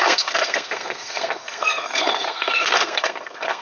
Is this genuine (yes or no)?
no